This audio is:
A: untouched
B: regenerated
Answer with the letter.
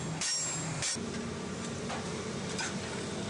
A